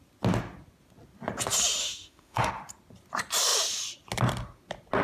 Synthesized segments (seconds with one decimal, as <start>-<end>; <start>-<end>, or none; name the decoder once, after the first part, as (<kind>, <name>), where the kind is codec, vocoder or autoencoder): 1.8-2.5 (autoencoder, DAC-VAE)